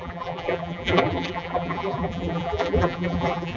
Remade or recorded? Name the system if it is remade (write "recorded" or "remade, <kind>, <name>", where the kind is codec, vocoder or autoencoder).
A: remade, vocoder, BigVGAN v2